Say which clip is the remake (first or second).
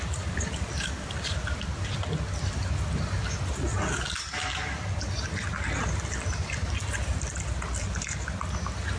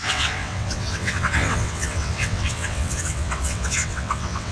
second